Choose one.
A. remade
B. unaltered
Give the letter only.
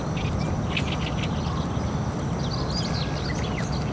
B